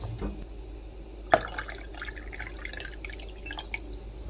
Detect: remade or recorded recorded